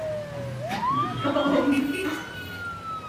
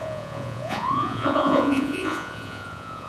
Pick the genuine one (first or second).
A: first